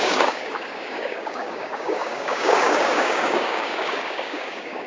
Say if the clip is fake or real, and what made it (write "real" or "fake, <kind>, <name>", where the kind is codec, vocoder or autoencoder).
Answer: fake, codec, DAC